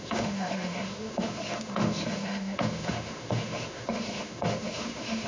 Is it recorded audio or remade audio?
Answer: remade